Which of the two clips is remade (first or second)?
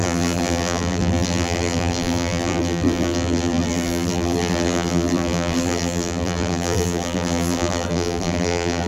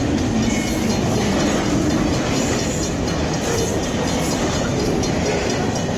first